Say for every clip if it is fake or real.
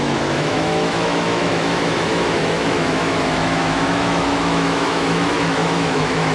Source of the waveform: fake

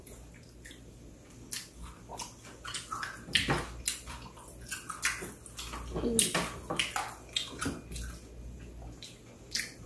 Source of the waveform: real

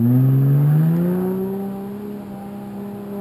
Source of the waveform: real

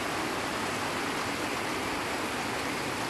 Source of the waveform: real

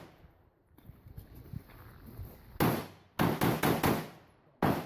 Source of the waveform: real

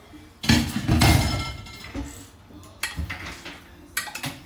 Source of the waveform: real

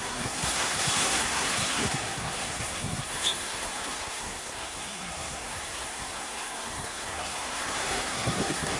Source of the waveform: fake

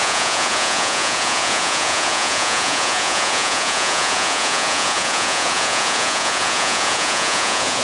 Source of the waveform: fake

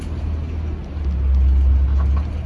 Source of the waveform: real